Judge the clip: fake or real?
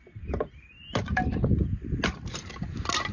fake